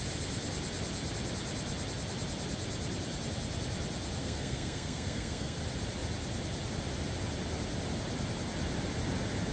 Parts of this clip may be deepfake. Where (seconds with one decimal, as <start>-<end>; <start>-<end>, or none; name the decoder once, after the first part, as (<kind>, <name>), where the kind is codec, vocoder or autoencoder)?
4.2-5.6 (codec, SNAC)